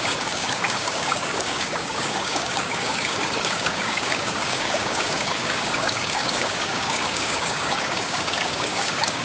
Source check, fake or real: fake